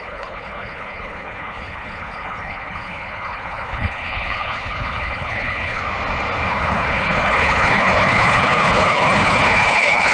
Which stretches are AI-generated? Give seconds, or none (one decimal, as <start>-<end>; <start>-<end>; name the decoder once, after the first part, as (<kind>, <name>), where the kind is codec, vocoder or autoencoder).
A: 0.0-5.8 (codec, HILCodec); 6.5-10.1

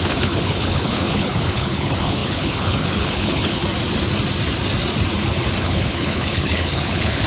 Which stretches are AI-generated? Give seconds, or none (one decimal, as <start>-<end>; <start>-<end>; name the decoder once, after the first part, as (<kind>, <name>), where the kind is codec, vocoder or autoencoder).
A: 0.0-3.6 (codec, HILCodec); 5.6-7.3